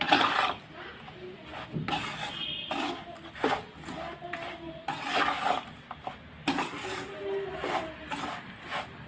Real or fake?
real